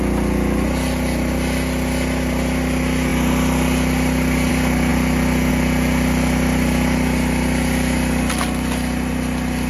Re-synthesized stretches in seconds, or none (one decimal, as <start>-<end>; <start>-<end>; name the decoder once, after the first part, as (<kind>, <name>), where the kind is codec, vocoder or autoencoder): none